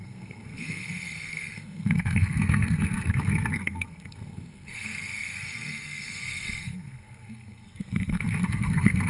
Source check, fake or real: fake